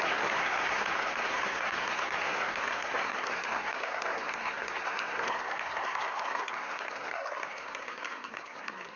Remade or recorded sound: remade